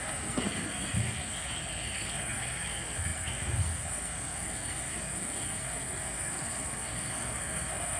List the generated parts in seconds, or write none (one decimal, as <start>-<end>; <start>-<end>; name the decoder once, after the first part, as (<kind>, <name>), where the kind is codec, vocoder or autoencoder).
0.0-8.0 (codec, SNAC)